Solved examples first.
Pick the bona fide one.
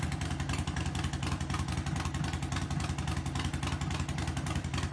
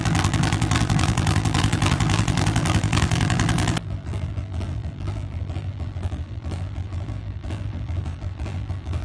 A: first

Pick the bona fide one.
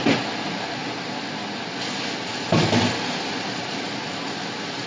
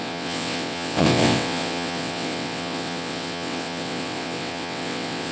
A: first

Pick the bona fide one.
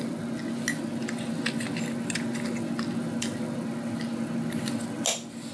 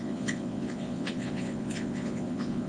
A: first